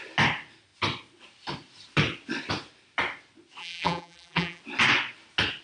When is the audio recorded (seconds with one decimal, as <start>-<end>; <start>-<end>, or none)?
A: 0.0-3.6; 4.6-5.6